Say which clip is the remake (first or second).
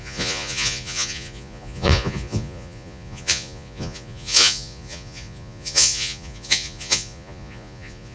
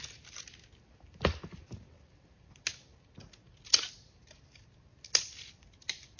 first